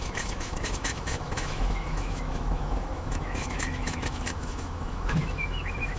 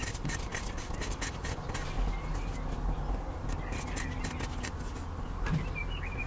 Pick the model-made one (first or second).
first